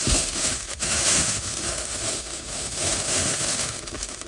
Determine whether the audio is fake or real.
fake